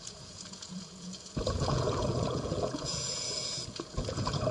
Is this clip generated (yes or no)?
yes